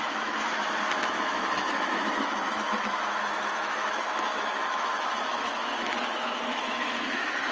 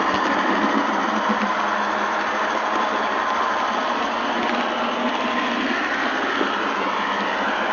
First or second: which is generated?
first